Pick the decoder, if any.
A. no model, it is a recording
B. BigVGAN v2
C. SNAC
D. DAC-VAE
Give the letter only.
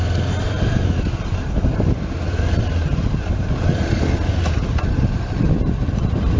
A